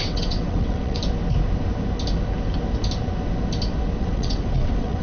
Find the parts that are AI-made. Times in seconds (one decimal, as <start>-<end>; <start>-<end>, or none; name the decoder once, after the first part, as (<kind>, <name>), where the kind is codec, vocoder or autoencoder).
0.0-1.0 (vocoder, WaveNeXt); 4.0-5.0